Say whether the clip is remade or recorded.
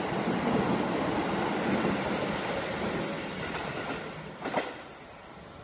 recorded